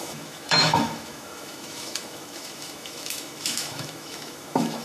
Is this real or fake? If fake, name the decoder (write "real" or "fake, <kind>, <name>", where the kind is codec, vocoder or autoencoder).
fake, autoencoder, DAC-VAE